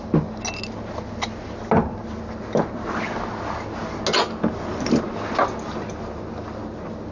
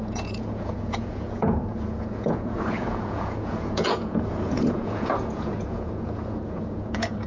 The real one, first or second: first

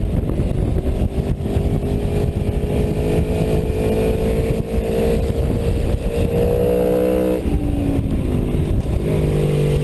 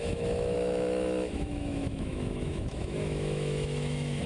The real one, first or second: first